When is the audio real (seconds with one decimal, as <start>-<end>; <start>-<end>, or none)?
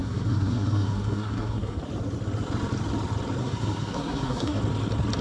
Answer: 1.8-3.4; 4.6-5.2